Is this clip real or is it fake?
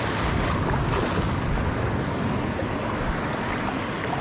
real